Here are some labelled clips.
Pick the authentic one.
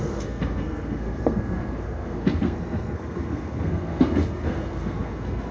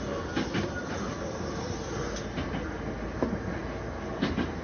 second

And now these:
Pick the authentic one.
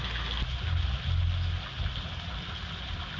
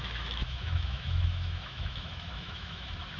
first